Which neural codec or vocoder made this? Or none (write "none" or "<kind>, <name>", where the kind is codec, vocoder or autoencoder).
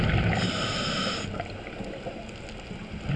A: none